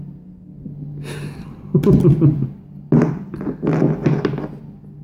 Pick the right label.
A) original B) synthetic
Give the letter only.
A